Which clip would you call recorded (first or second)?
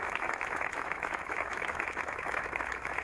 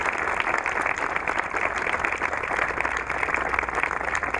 second